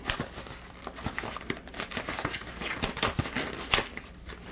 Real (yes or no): yes